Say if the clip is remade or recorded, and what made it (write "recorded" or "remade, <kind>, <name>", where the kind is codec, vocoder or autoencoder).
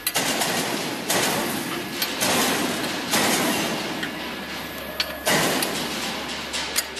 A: recorded